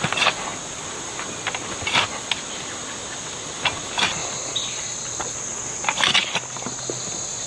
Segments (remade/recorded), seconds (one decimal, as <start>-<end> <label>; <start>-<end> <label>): 0.0-7.5 recorded